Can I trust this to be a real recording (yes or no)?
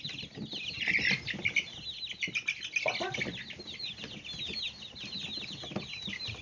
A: yes